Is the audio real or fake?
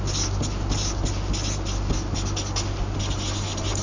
real